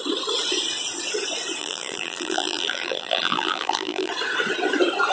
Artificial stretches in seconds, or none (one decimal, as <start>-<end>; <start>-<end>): 1.6-4.1